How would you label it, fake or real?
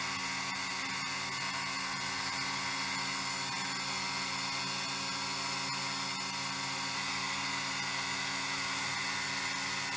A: real